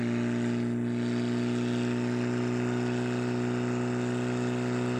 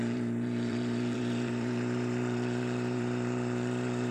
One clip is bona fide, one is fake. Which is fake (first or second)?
second